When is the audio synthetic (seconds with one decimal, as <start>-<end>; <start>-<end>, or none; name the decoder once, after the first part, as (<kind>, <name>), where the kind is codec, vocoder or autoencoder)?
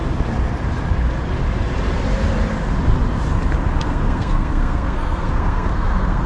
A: 3.8-6.3 (codec, SNAC)